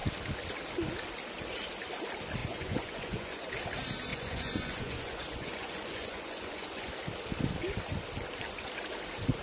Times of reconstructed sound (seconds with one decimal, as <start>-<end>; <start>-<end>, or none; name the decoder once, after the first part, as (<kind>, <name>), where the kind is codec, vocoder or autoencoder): 2.4-3.5 (vocoder, Vocos); 4.1-6.9